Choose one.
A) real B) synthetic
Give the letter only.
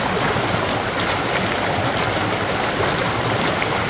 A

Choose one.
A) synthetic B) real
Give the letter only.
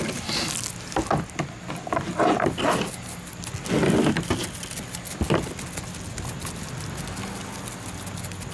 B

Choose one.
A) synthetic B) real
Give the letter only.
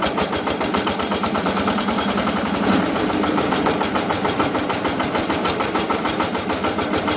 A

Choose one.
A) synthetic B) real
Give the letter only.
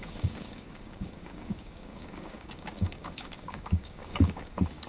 A